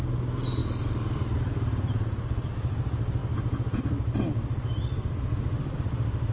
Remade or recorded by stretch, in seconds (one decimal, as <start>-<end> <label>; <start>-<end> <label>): 0.0-0.6 recorded; 0.6-2.5 remade; 2.5-3.2 recorded; 3.2-3.8 remade; 3.8-4.9 recorded; 4.9-5.8 remade; 5.8-6.3 recorded